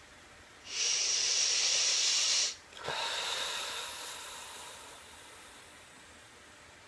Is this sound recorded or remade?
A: remade